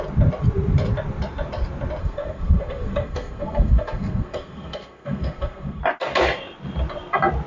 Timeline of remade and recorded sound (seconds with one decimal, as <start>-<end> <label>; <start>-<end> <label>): 0.0-2.0 recorded; 2.0-5.8 remade; 5.8-7.5 recorded